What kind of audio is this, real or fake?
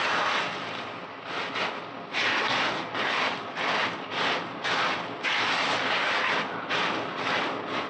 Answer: real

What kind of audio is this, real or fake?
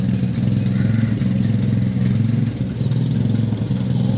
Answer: real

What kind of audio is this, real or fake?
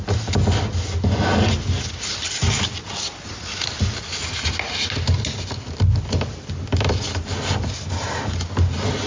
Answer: real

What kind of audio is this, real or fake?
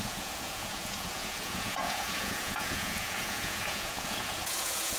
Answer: fake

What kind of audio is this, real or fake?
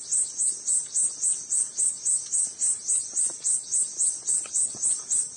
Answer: real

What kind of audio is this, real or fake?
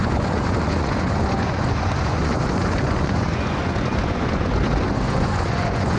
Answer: fake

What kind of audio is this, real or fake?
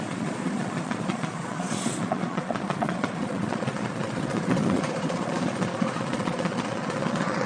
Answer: fake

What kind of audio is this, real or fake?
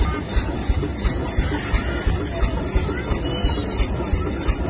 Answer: real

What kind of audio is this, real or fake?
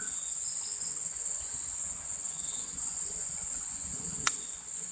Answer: fake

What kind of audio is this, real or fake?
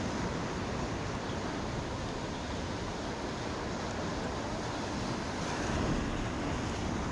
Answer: real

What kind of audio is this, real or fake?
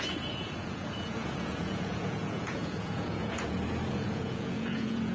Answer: fake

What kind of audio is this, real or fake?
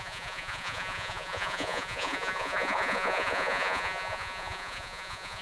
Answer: fake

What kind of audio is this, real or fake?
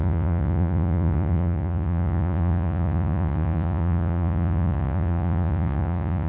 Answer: fake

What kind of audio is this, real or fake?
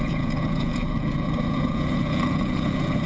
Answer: fake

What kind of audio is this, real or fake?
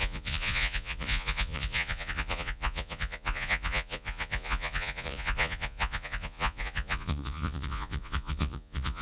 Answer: fake